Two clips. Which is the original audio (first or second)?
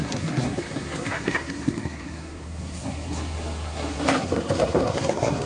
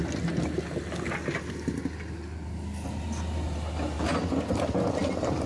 second